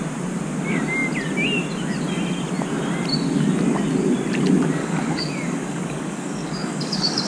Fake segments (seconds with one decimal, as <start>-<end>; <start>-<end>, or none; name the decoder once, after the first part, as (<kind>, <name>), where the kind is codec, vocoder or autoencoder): 4.8-7.3 (codec, DAC)